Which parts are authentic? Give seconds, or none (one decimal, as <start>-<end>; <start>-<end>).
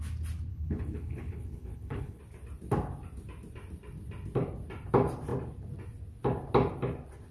0.0-0.5; 2.2-7.3